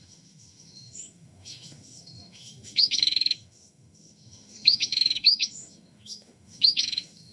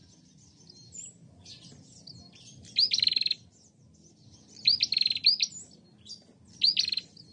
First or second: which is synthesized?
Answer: first